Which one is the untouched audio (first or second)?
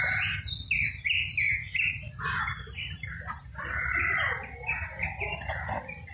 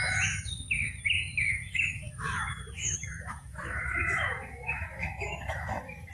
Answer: first